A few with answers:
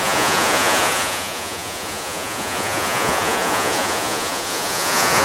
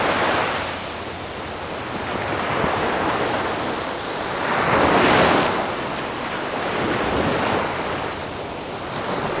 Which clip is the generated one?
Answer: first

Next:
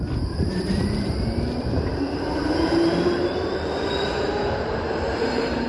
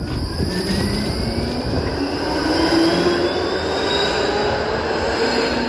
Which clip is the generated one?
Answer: first